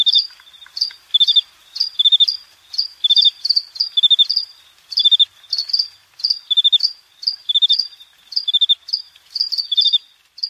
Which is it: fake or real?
real